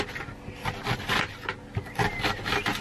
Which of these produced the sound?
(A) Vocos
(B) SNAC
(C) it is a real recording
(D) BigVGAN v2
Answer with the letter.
C